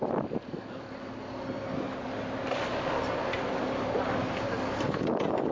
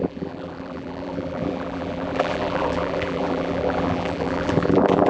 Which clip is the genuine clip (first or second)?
first